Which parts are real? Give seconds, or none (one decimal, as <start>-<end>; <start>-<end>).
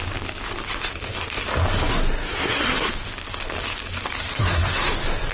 0.0-1.9; 2.9-4.3